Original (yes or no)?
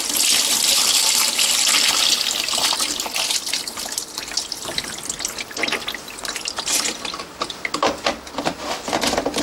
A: yes